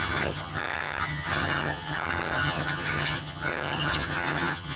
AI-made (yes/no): yes